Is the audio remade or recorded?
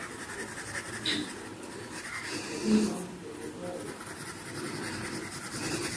recorded